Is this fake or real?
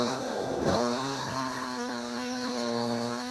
fake